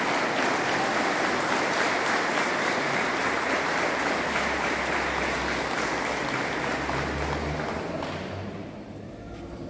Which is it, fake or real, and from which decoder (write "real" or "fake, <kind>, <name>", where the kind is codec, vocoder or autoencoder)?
real